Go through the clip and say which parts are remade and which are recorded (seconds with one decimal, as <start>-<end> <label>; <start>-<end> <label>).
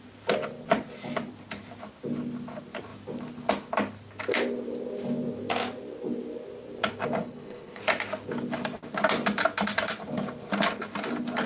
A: 0.0-7.2 recorded; 7.2-7.8 remade; 7.8-11.5 recorded